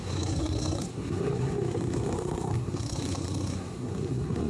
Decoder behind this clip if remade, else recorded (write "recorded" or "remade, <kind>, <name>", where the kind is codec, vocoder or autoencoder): remade, codec, SNAC